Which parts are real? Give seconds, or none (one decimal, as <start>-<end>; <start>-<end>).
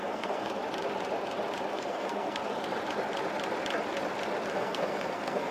0.6-1.7; 2.4-4.5